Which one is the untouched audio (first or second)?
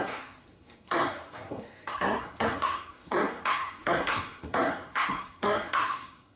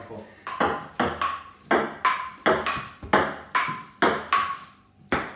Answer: second